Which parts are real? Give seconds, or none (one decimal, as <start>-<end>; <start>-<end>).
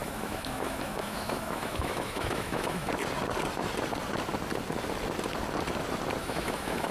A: 2.9-6.2